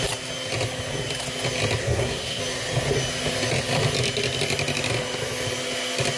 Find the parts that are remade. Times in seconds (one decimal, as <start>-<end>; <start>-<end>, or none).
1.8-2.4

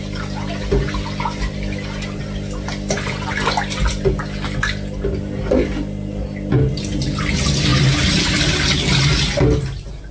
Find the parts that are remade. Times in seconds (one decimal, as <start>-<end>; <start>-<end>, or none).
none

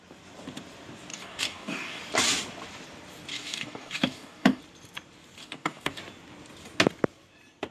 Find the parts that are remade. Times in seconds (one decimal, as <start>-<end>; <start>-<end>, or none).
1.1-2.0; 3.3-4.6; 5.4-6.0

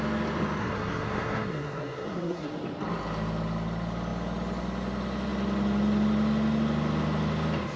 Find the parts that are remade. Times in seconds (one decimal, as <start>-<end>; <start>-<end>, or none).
0.6-2.5

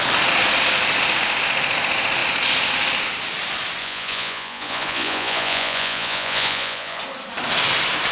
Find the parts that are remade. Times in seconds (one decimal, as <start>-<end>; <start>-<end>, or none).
3.8-7.0

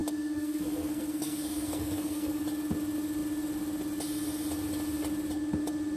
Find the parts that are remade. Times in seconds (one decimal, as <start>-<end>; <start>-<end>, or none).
0.0-2.4

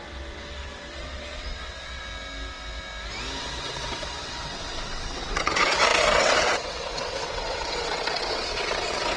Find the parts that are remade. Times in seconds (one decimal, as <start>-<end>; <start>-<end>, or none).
0.0-2.0; 3.4-9.2

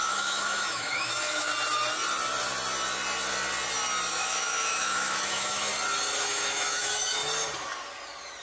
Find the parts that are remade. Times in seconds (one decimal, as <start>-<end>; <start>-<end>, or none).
0.0-1.5; 4.1-5.7; 6.3-7.2